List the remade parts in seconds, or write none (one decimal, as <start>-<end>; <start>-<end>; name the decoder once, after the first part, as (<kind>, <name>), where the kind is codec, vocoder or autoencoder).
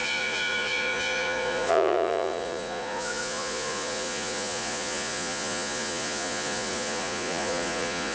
0.0-8.1 (vocoder, Vocos)